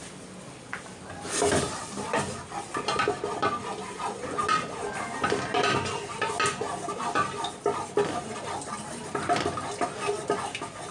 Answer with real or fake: real